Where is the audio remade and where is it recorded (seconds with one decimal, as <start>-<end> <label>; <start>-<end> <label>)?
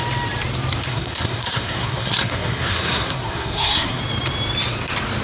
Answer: 0.0-0.9 recorded; 0.9-4.0 remade; 4.0-5.2 recorded